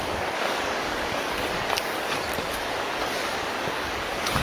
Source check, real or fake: fake